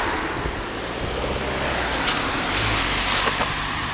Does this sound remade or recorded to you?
recorded